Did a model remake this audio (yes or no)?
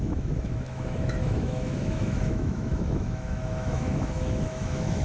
yes